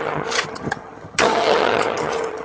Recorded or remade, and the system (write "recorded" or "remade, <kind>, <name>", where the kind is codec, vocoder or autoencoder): remade, vocoder, HiFi-GAN